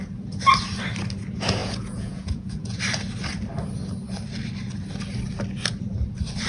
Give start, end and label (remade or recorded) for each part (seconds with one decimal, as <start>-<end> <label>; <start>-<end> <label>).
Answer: 0.0-1.6 recorded; 1.6-2.8 remade; 2.8-6.5 recorded